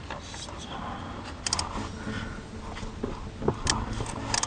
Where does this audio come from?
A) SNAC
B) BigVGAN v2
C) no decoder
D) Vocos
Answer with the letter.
C